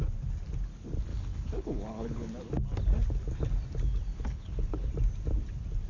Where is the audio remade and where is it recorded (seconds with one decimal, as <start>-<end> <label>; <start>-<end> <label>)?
0.0-1.1 recorded; 1.1-2.3 remade; 2.3-4.1 recorded; 4.1-4.9 remade; 4.9-5.9 recorded